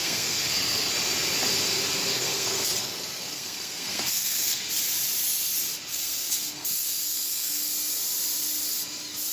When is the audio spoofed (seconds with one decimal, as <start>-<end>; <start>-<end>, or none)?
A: 0.0-0.9; 2.1-4.6; 5.9-7.6